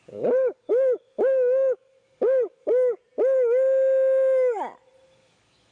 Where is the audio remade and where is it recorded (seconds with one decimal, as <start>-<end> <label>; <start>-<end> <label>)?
0.0-3.0 remade; 3.0-5.1 recorded; 5.1-5.7 remade